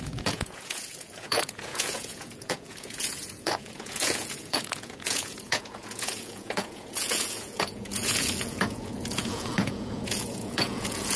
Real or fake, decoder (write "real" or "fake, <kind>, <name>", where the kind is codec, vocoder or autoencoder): fake, vocoder, Vocos